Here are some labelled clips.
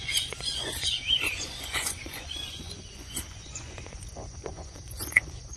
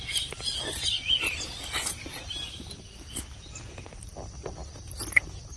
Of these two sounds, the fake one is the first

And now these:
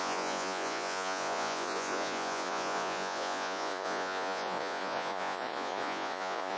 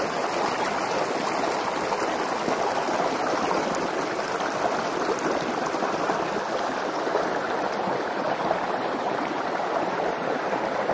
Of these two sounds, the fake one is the first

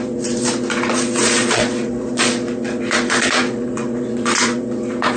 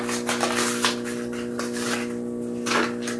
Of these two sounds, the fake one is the first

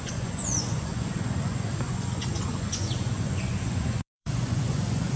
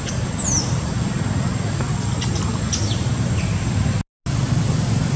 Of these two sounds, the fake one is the first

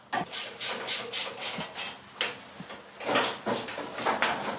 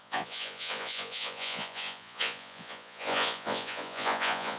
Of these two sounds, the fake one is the second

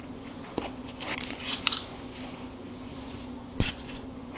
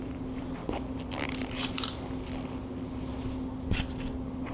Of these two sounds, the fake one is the first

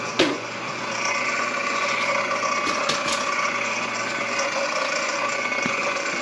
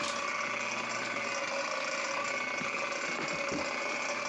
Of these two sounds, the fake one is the first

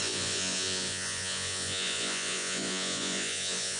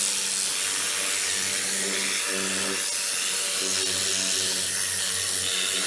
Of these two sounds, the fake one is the first